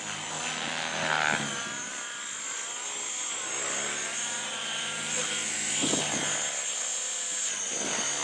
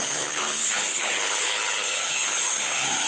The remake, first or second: second